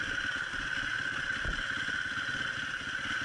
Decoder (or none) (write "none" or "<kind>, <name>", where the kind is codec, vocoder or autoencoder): none